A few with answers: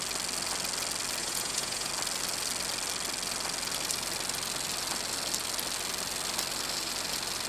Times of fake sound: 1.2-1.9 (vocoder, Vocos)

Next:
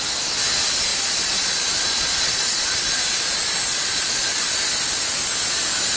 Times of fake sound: 0.9-4.5 (vocoder, Vocos)

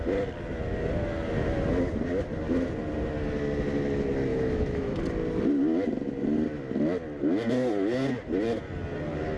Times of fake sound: 4.3-5.0 (autoencoder, DAC-VAE)